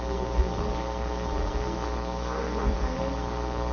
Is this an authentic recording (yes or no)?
no